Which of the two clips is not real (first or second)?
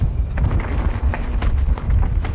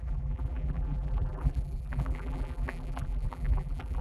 second